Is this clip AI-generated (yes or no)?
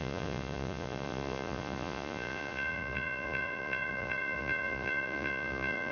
yes